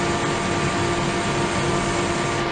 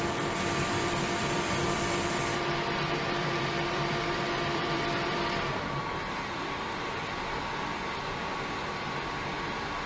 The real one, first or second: first